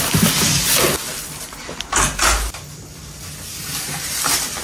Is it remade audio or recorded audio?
recorded